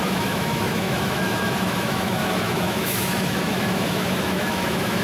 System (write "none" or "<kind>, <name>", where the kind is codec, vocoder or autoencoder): autoencoder, DAC-VAE